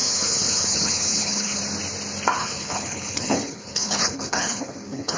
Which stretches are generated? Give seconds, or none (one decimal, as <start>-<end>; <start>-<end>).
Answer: 0.0-1.6; 2.4-5.2